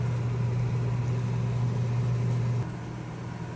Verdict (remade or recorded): recorded